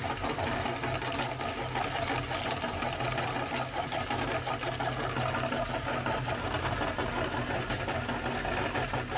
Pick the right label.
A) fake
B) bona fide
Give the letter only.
B